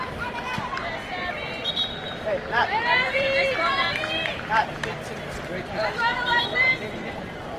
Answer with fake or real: fake